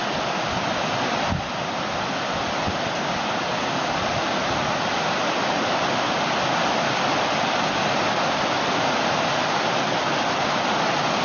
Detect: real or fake real